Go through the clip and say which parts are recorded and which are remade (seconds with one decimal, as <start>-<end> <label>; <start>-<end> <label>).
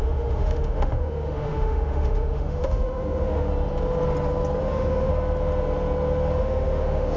0.0-3.5 remade; 3.5-4.6 recorded; 4.6-5.1 remade; 5.1-6.4 recorded; 6.4-7.2 remade